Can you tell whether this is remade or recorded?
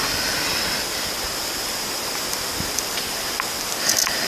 recorded